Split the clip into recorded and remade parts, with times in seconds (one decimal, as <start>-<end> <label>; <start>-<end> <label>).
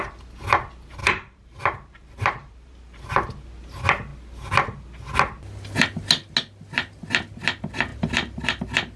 0.0-1.0 recorded; 1.0-3.1 remade; 3.1-7.9 recorded; 7.9-8.6 remade; 8.6-9.0 recorded